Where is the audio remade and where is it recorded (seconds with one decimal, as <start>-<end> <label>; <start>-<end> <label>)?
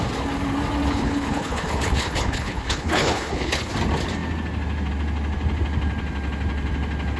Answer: 0.0-0.9 recorded; 0.9-3.7 remade; 3.7-7.2 recorded